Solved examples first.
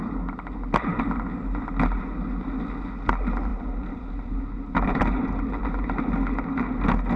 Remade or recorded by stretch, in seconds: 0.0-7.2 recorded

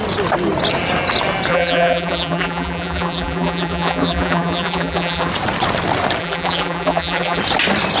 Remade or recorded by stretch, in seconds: 0.0-1.5 recorded; 1.5-5.3 remade; 5.3-6.2 recorded; 6.2-7.4 remade; 7.4-8.0 recorded

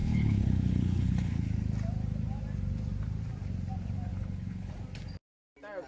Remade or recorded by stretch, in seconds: 0.0-1.5 remade; 1.5-4.1 recorded; 4.1-4.7 remade; 4.7-5.9 recorded

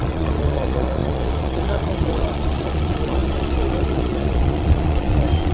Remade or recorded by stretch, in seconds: 0.0-5.5 remade

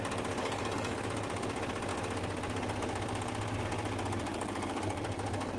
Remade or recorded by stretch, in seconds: 0.0-0.4 recorded; 0.4-1.0 remade; 1.0-4.3 recorded; 4.3-4.8 remade; 4.8-5.6 recorded

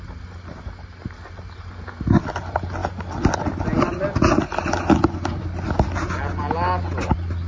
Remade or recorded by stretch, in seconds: 0.0-7.5 recorded

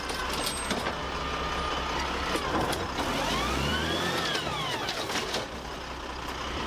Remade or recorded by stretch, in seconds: 0.0-6.7 recorded

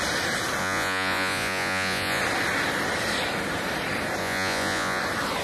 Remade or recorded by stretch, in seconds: 0.0-0.6 recorded; 0.6-2.2 remade; 2.2-4.2 recorded; 4.2-5.0 remade; 5.0-5.4 recorded